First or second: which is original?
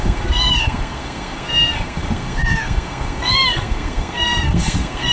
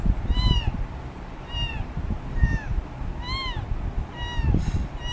second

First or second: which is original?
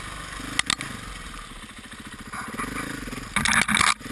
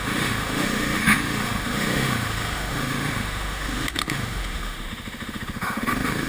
first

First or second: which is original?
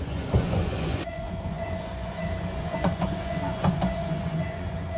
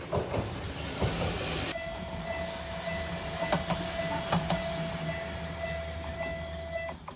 second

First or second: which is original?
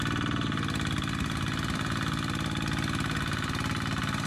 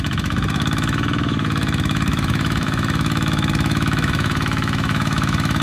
first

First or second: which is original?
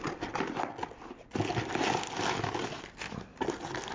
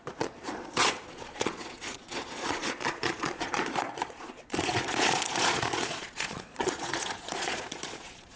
first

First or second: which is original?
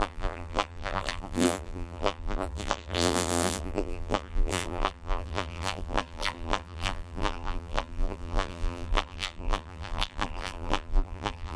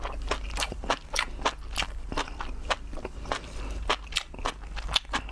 second